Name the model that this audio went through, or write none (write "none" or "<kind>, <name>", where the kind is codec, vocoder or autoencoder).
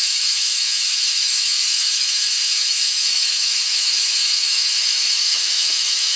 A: autoencoder, DAC-VAE